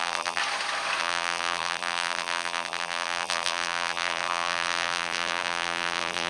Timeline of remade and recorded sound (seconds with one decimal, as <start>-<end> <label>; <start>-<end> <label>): 0.0-0.4 remade; 0.4-1.0 recorded; 1.0-6.3 remade